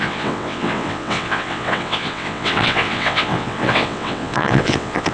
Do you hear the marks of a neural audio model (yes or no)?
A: yes